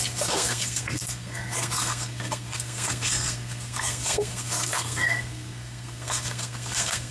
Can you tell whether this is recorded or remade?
remade